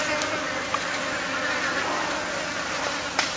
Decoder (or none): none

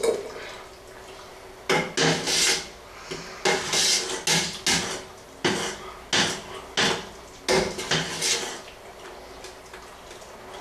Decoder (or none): none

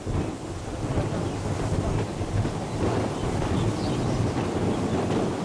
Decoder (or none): none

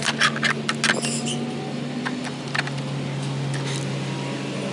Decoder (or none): none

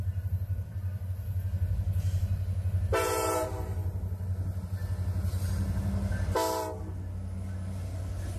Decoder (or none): none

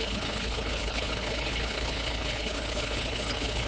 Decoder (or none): codec, HILCodec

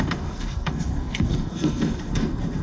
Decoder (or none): codec, SNAC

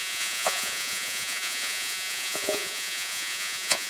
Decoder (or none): vocoder, Vocos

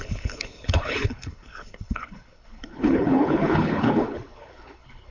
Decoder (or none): codec, HILCodec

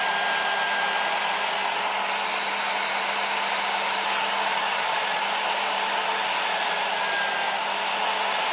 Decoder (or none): none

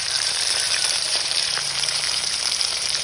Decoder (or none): vocoder, BigVGAN v2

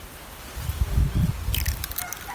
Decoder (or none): none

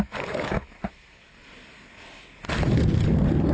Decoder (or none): none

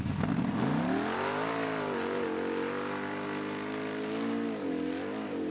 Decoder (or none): none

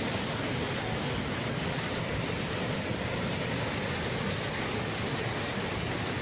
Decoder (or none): none